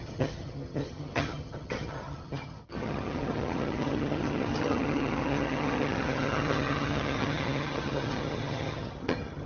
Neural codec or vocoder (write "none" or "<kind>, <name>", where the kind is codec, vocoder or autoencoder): vocoder, HiFi-GAN